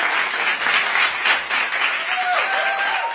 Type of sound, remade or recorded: recorded